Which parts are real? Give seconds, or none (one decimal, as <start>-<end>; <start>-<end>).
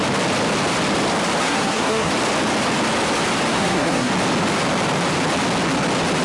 0.0-1.4; 2.1-3.5; 4.1-6.2